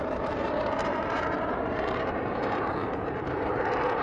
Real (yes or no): no